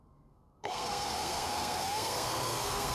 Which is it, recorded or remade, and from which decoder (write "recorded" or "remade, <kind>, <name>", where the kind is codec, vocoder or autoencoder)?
remade, codec, SNAC